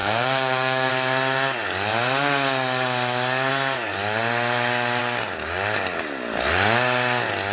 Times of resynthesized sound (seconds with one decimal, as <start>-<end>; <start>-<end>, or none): 0.0-0.9